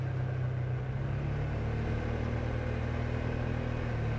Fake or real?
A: real